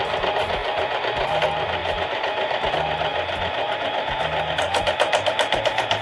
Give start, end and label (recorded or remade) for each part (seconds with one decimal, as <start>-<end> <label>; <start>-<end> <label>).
0.0-1.8 recorded; 1.8-2.7 remade; 2.7-6.0 recorded